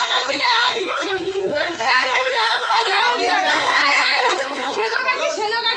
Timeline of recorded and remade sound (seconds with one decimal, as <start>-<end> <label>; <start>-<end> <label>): 0.0-3.0 remade; 3.0-3.5 recorded; 3.5-5.0 remade; 5.0-5.8 recorded